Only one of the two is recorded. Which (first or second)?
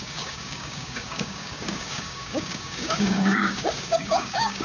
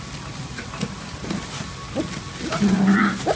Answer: second